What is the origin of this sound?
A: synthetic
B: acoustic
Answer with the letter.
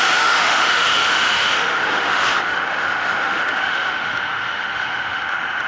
A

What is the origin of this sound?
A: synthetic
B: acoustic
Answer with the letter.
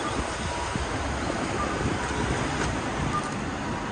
B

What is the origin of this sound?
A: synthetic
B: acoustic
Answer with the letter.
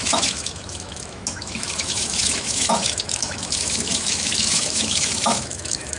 A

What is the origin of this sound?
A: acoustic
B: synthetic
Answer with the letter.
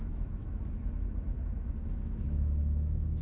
B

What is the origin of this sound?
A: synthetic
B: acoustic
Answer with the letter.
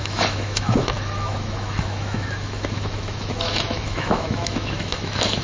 A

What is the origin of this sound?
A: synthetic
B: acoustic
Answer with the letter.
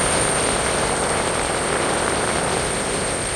B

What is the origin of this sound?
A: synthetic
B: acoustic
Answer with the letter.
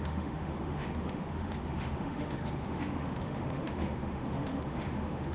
A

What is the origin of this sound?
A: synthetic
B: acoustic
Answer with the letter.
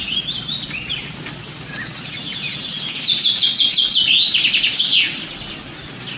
B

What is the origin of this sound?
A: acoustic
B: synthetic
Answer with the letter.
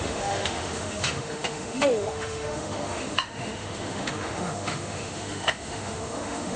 B